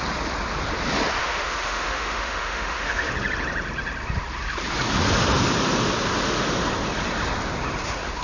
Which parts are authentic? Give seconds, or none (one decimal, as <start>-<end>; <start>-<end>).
0.0-1.2; 3.1-8.2